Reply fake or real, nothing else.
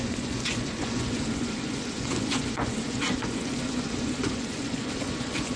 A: fake